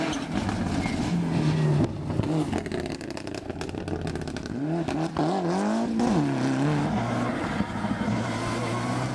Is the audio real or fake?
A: real